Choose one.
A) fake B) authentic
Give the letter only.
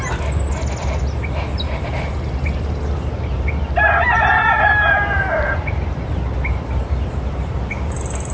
B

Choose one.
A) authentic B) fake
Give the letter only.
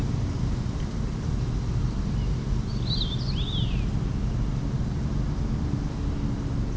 A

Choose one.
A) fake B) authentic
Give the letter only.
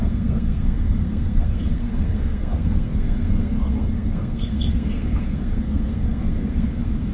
A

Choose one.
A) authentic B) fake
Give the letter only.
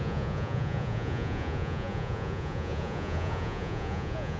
B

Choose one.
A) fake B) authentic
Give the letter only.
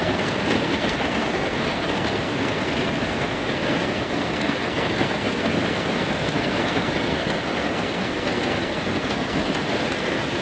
A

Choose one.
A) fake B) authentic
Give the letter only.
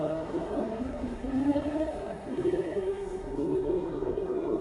A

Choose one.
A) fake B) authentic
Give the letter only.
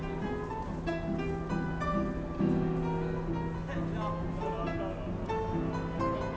B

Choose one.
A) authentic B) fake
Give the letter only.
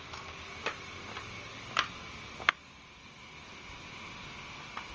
A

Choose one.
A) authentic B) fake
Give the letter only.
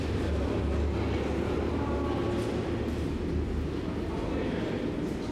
A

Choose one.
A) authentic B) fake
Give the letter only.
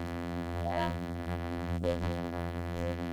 B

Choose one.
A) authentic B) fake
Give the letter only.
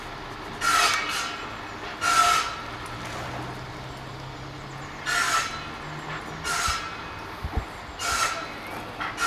A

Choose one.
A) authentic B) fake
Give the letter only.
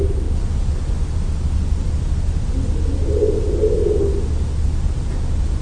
A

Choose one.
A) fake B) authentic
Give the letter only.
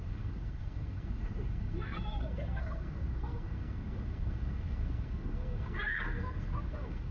A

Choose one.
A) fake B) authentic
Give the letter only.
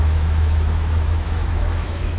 A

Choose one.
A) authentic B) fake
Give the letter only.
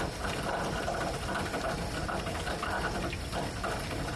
A